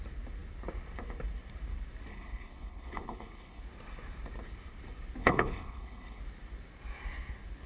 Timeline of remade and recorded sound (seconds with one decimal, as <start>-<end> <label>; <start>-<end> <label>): 0.0-2.1 recorded; 2.1-3.6 remade; 3.6-5.2 recorded; 5.2-6.2 remade; 6.2-7.7 recorded